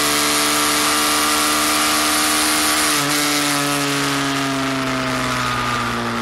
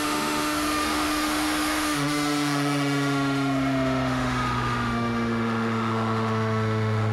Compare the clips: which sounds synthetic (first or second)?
second